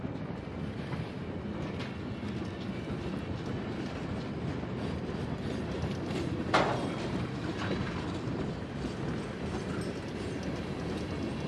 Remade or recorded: recorded